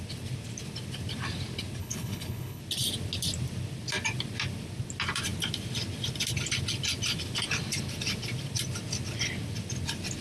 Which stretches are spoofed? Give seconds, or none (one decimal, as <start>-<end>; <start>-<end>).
1.8-2.6